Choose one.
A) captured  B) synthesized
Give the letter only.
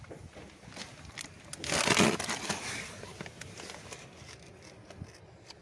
A